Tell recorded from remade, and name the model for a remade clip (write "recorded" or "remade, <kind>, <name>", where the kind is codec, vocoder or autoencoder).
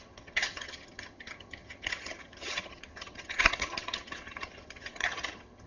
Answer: remade, vocoder, HiFi-GAN